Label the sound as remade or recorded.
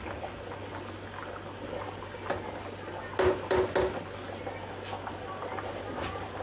recorded